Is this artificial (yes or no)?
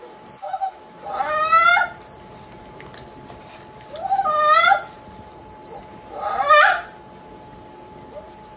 no